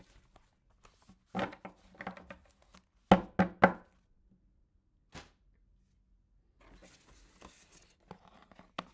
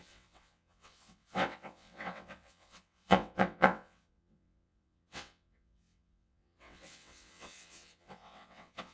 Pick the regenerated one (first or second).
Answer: second